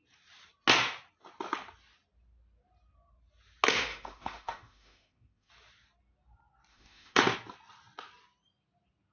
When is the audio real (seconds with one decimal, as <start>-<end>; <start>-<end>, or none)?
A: 0.0-3.9; 5.5-6.7; 7.2-9.1